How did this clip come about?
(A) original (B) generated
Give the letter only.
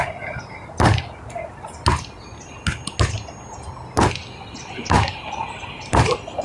A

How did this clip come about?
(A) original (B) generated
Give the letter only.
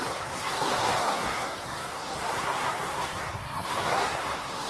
B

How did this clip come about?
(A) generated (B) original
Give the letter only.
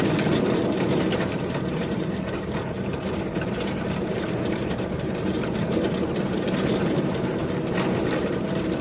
A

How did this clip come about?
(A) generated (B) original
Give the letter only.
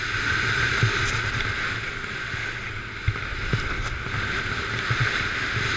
B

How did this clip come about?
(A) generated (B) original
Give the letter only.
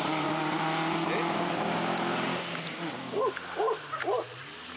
B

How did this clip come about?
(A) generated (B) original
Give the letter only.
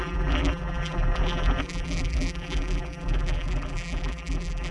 A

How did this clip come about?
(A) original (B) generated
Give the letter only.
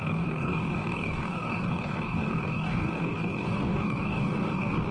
B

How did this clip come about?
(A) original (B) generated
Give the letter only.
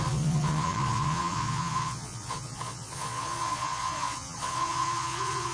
B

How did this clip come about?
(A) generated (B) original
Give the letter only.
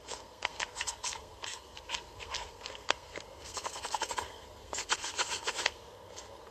A